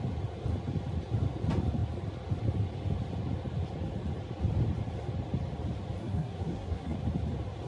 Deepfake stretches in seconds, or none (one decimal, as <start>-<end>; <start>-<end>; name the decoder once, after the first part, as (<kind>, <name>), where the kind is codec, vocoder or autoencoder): 6.0-7.0 (codec, SNAC)